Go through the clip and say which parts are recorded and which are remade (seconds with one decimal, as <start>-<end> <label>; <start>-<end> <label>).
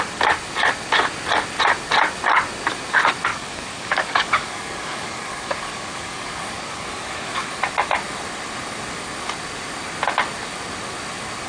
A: 0.0-3.3 recorded; 3.3-7.6 remade; 7.6-11.5 recorded